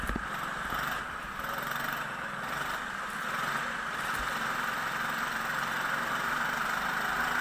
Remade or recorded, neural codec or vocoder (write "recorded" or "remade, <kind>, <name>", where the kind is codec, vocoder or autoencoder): recorded